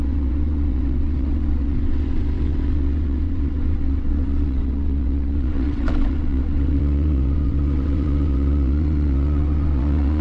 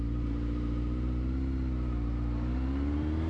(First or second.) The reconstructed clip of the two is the first